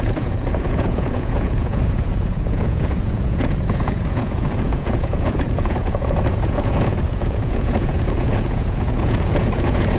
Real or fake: fake